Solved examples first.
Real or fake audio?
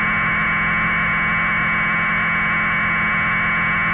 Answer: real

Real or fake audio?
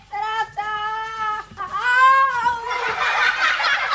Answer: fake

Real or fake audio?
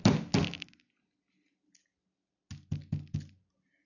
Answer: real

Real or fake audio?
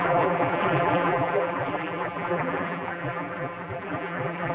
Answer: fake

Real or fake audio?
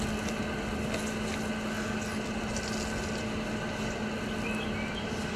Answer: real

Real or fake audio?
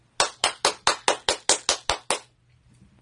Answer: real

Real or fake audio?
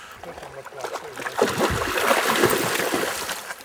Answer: real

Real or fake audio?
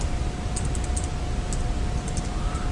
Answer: real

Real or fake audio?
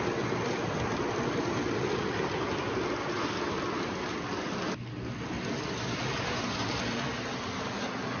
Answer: real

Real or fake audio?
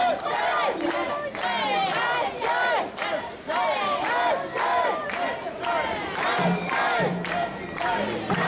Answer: real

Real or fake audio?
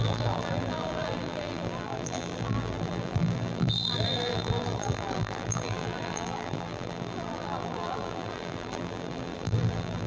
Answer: fake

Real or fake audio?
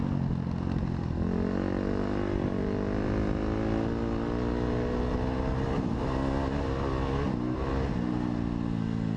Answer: real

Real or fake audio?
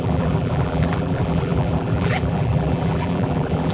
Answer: fake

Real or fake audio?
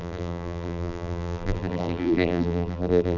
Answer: fake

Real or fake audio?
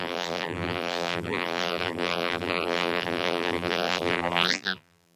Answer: fake